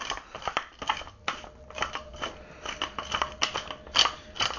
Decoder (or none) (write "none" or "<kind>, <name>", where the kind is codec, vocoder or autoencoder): none